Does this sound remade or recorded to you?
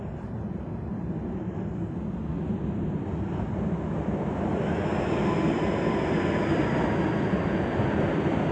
recorded